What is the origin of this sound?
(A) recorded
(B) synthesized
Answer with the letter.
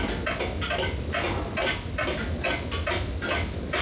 A